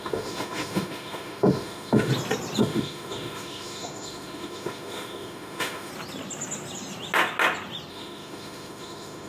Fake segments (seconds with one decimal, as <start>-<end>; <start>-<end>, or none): 0.0-2.1; 2.6-5.9; 7.9-9.3